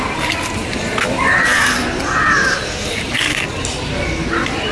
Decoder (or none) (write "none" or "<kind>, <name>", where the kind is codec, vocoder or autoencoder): none